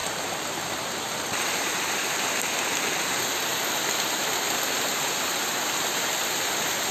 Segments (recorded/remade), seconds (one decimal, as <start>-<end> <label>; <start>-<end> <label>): 0.0-2.3 remade; 2.3-6.9 recorded